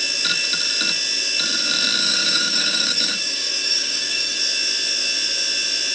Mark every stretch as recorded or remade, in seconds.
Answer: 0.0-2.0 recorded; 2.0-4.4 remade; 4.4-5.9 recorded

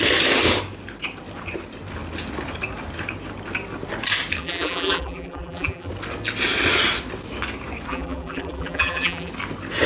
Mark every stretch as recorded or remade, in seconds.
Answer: 0.0-4.4 recorded; 4.4-5.9 remade; 5.9-7.9 recorded; 7.9-9.3 remade; 9.3-9.9 recorded

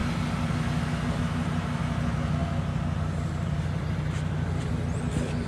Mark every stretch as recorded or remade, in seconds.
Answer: 0.0-5.5 recorded

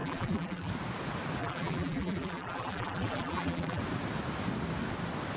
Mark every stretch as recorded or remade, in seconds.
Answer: 0.0-0.7 remade; 0.7-1.4 recorded; 1.4-3.8 remade; 3.8-5.4 recorded

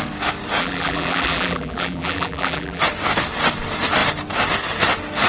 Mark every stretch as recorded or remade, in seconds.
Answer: 0.0-0.6 recorded; 0.6-2.8 remade; 2.8-5.3 recorded

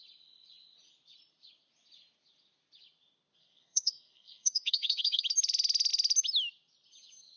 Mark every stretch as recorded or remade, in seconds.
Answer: 0.0-3.4 recorded; 3.4-5.2 remade; 5.2-7.4 recorded